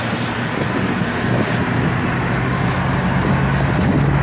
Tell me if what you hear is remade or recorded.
recorded